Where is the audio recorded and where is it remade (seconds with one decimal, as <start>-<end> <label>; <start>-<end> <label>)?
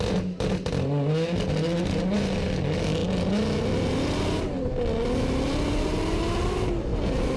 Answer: 0.0-7.4 recorded